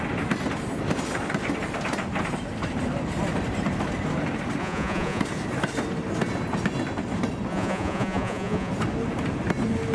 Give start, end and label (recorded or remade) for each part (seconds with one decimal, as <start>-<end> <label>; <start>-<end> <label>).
0.0-4.6 recorded; 4.6-5.2 remade; 5.2-7.5 recorded; 7.5-8.7 remade; 8.7-9.9 recorded